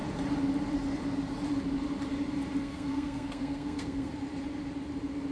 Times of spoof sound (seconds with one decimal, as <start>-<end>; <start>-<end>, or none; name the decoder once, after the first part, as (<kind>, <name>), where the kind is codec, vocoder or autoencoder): 2.6-4.1 (codec, SNAC)